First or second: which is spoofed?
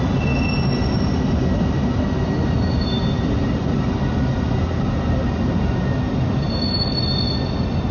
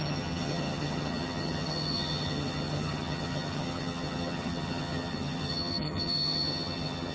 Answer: second